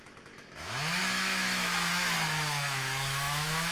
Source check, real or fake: fake